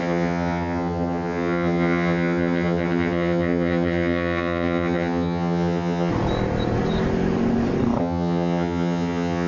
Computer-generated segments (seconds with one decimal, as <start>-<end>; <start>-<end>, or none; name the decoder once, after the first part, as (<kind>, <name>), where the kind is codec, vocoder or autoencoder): 0.0-6.1 (vocoder, HiFi-GAN); 8.0-9.5